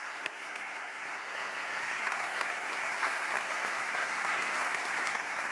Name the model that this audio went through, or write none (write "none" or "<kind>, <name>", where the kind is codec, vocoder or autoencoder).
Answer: codec, SNAC